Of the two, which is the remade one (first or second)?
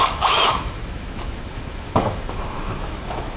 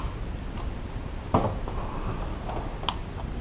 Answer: first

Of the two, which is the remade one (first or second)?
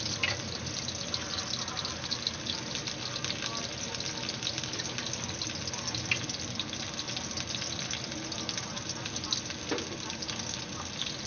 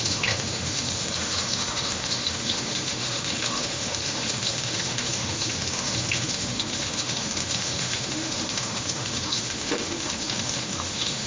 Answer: second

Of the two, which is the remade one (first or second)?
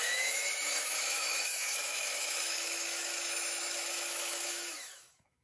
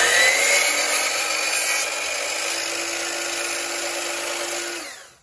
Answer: first